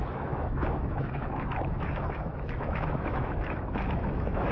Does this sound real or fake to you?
fake